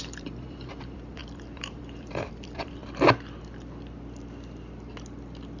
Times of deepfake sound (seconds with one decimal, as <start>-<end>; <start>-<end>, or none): 0.0-2.8